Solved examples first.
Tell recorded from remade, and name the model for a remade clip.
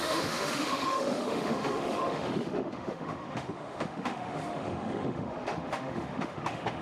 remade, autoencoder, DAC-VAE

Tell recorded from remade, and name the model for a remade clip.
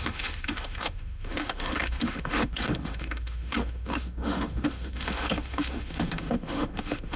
remade, autoencoder, DAC-VAE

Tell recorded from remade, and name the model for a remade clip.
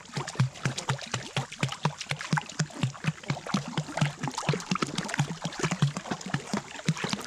recorded